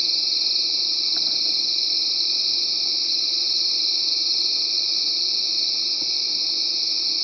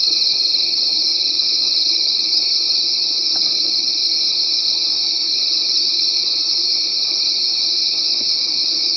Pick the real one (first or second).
first